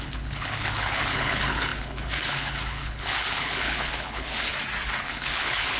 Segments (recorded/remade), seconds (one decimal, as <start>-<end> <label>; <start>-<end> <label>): 0.0-4.5 remade; 4.5-5.0 recorded; 5.0-5.8 remade